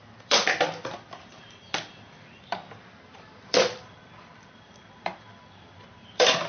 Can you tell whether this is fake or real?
fake